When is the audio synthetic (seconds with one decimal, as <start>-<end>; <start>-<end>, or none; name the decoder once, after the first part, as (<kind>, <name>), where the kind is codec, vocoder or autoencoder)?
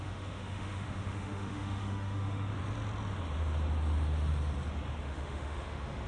0.0-2.5 (autoencoder, DAC-VAE); 5.0-6.1